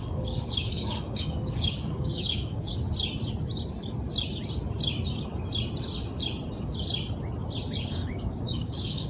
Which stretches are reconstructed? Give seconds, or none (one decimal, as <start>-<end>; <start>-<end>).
0.0-2.7; 7.9-9.1